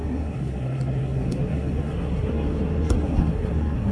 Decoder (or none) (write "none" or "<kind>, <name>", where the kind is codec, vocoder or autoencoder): codec, SNAC